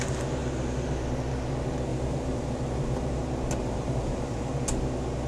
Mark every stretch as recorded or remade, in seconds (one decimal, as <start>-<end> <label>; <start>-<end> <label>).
0.0-1.9 recorded; 1.9-3.2 remade; 3.2-3.6 recorded; 3.6-4.5 remade; 4.5-5.3 recorded